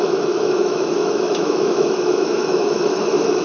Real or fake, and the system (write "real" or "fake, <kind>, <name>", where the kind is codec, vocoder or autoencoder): fake, autoencoder, DAC-VAE